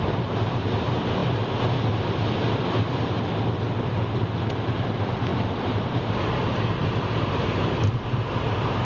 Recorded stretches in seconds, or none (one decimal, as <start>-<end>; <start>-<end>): 1.2-4.5